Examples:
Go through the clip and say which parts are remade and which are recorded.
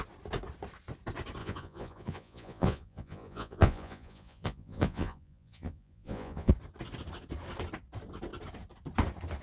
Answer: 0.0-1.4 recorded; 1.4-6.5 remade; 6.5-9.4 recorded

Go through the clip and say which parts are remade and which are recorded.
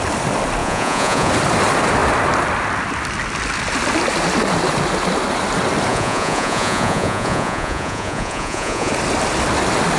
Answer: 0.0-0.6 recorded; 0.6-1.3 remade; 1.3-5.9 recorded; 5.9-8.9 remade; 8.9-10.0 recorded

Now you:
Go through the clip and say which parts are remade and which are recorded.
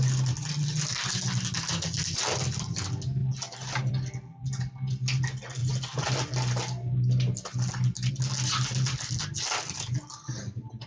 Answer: 0.0-10.9 recorded